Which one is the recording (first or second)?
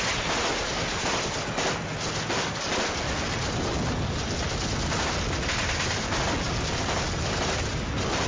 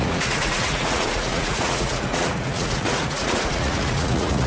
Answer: first